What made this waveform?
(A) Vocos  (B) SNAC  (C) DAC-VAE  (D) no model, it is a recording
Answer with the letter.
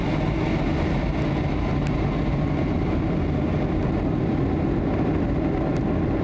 D